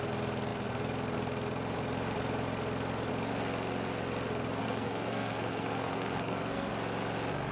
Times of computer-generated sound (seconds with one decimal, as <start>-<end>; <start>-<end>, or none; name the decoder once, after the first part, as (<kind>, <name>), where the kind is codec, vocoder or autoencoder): 4.6-6.7 (codec, SNAC)